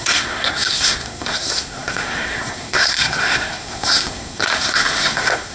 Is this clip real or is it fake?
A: fake